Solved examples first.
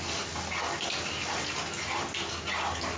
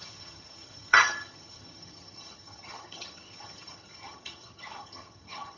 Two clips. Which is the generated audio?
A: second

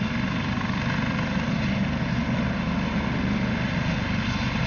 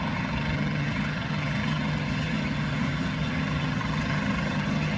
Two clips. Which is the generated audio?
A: second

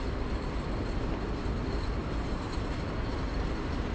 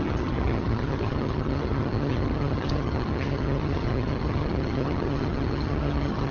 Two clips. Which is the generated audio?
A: second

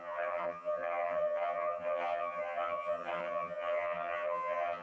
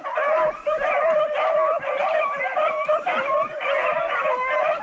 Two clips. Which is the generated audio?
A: first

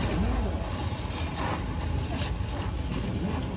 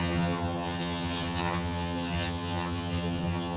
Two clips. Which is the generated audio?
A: second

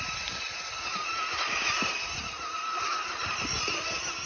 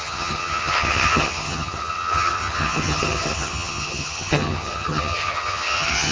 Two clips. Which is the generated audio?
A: second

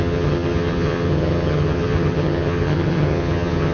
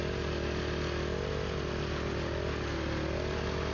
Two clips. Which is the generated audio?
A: first